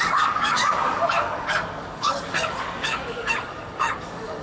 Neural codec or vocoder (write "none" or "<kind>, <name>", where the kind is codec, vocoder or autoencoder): codec, DAC